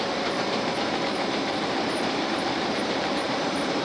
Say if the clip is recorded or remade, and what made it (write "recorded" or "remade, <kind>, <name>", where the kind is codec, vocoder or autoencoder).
remade, vocoder, BigVGAN v2